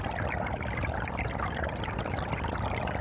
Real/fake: real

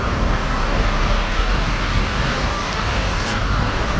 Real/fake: fake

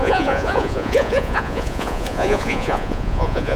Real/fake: fake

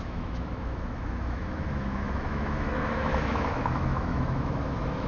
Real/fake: fake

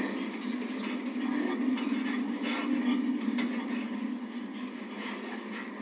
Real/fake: real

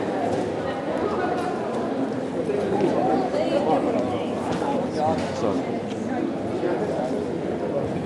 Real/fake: real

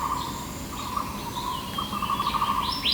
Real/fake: real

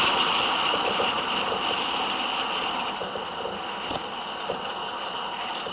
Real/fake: real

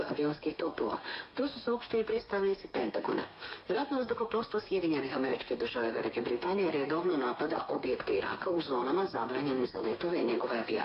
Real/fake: fake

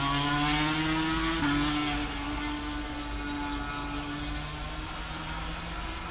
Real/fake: real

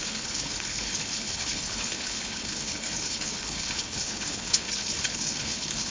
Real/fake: fake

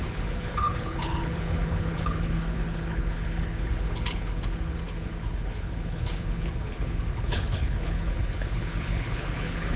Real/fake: fake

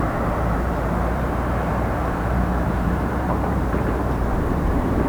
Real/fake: fake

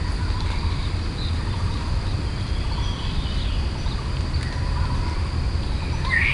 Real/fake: real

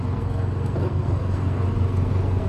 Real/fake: fake